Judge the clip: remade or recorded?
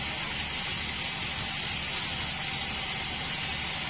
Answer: recorded